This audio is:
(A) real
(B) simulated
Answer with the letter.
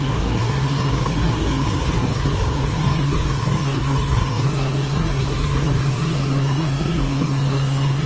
B